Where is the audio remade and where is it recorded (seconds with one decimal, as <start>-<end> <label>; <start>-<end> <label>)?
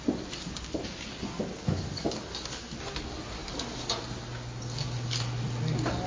0.0-1.5 recorded; 1.5-2.7 remade; 2.7-3.4 recorded; 3.4-4.0 remade; 4.0-6.1 recorded